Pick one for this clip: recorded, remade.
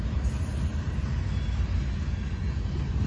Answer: recorded